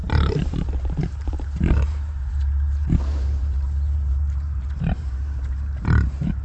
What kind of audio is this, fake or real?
fake